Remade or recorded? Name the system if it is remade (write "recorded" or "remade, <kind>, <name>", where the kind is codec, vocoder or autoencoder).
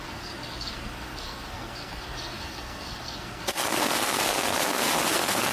remade, codec, SNAC